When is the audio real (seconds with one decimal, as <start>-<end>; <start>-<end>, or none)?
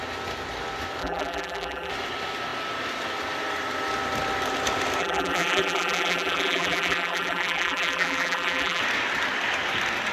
0.0-1.0; 1.9-5.0; 8.8-10.1